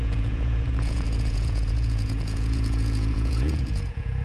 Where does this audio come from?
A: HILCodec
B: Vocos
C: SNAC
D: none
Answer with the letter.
B